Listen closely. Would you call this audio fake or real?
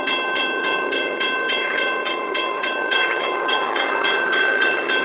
fake